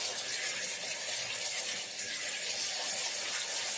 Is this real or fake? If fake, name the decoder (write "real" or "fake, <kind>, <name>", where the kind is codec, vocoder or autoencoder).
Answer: real